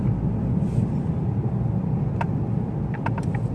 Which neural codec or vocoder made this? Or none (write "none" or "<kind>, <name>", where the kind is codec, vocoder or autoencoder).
none